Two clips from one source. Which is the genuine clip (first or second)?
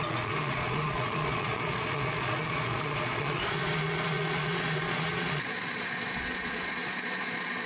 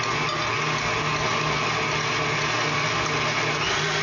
second